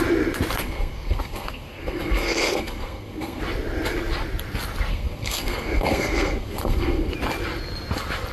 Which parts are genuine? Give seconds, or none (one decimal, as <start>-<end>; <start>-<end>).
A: 0.0-0.6; 3.4-4.9; 7.1-8.3